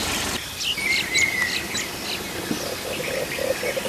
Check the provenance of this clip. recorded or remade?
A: recorded